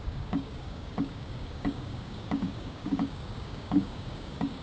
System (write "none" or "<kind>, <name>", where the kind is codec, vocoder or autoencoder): codec, DAC